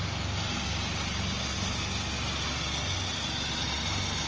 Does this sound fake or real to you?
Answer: real